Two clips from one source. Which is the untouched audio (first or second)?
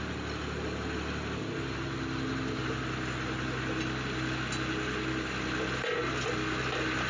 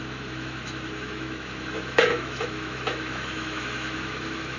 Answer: first